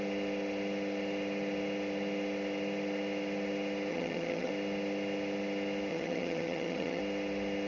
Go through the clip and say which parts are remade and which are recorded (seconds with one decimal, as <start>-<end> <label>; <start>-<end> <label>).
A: 0.0-3.9 recorded; 3.9-4.5 remade; 4.5-5.9 recorded; 5.9-7.0 remade; 7.0-7.7 recorded